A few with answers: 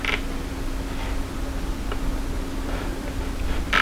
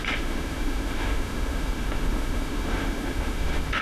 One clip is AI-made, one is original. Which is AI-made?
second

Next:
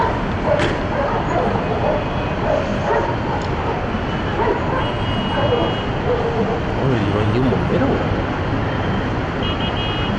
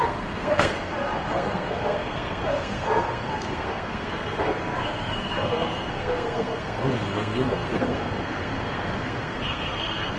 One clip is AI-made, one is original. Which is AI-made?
second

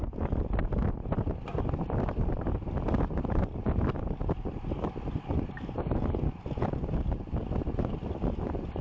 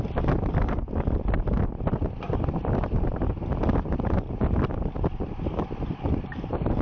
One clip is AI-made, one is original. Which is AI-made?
second